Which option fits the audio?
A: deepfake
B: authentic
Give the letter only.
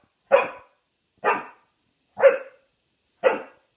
B